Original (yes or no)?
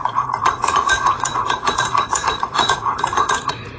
no